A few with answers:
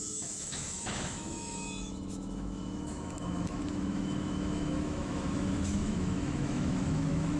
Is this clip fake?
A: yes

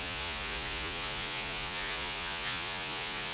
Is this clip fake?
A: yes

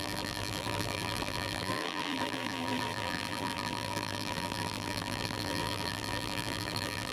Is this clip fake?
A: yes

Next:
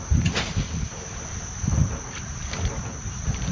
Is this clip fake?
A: yes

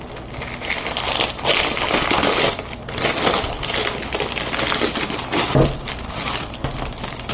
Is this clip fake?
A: no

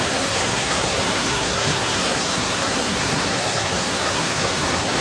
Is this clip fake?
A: yes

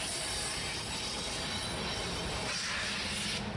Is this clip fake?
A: no